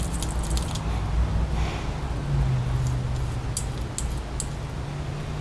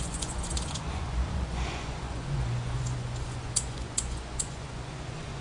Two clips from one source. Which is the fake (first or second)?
second